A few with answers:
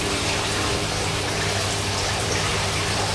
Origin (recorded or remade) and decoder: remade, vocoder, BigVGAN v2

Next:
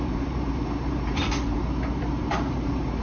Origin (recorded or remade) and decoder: remade, vocoder, BigVGAN v2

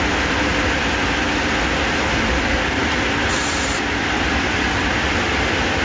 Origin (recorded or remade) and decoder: recorded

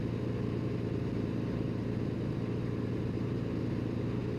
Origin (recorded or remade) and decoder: recorded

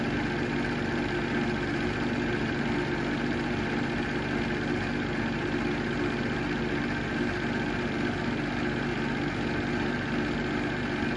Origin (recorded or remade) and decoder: recorded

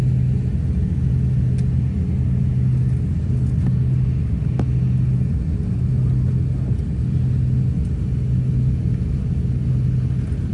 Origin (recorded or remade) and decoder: recorded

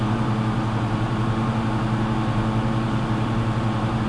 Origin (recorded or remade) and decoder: remade, vocoder, BigVGAN v2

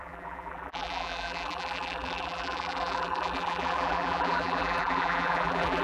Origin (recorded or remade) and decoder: remade, vocoder, BigVGAN v2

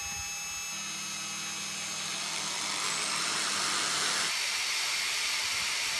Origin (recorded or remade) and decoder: recorded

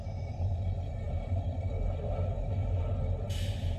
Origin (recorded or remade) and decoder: recorded